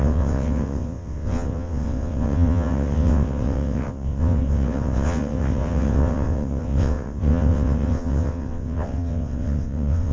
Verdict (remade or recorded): remade